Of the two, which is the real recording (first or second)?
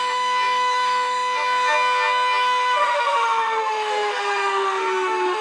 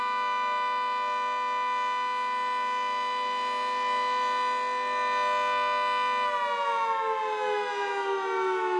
second